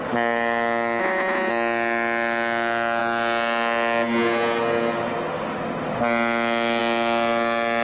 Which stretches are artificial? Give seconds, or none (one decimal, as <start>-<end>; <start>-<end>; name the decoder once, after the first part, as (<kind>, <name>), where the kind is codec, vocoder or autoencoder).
1.0-1.5 (vocoder, Vocos)